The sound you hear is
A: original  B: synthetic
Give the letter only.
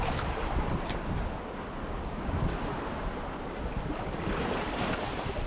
A